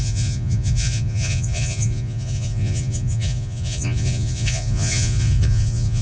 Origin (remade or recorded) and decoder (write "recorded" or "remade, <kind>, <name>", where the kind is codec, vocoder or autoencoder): remade, vocoder, Vocos